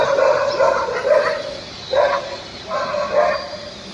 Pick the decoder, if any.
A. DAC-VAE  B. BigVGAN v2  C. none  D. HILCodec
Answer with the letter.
C